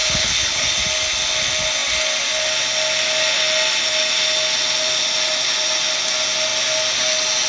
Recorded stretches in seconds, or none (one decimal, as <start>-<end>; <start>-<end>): 0.7-7.5